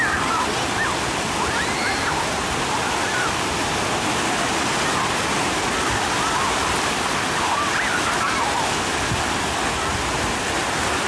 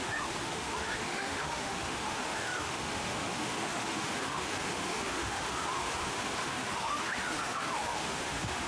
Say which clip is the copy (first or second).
second